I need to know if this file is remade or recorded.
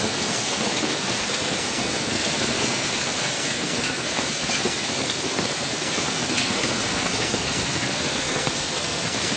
remade